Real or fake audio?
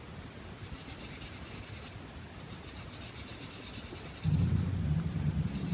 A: real